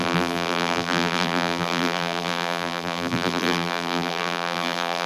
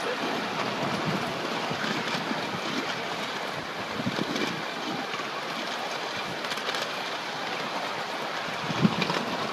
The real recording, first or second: second